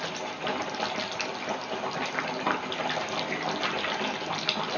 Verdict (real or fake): real